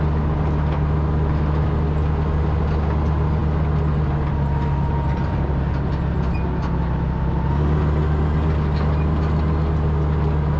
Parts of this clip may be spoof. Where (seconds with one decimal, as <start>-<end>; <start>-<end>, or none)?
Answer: none